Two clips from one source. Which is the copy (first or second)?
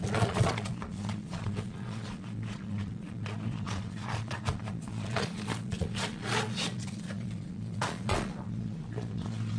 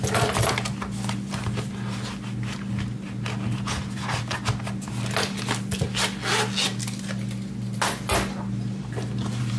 first